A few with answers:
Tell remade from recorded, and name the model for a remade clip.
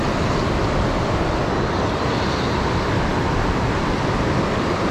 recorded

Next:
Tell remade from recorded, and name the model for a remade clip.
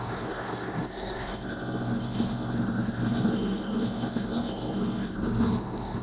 remade, codec, SNAC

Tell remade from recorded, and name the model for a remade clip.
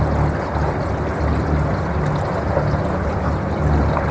recorded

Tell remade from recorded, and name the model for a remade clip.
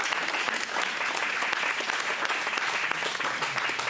recorded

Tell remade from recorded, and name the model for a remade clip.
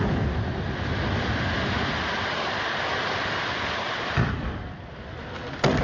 recorded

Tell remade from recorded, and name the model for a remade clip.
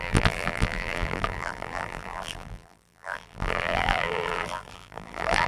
remade, vocoder, BigVGAN v2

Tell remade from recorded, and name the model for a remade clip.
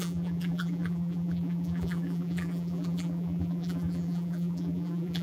remade, vocoder, BigVGAN v2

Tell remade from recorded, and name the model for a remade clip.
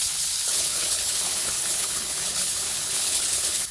remade, codec, HILCodec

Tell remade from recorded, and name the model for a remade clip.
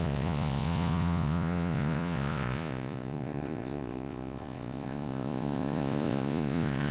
remade, vocoder, Vocos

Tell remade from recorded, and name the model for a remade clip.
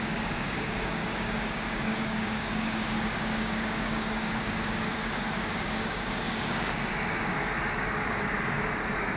remade, codec, DAC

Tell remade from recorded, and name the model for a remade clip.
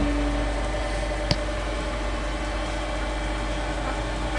recorded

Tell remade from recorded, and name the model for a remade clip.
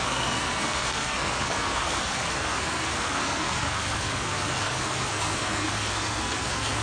remade, codec, SNAC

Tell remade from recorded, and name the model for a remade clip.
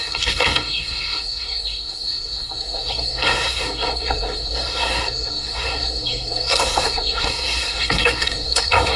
remade, codec, SNAC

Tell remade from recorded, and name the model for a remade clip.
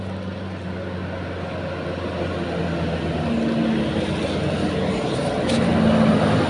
recorded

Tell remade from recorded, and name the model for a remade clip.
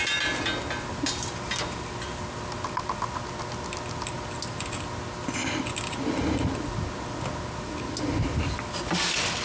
recorded